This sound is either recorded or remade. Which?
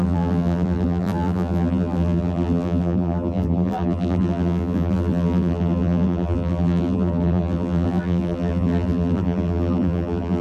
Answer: remade